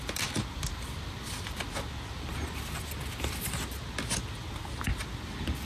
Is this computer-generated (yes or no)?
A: no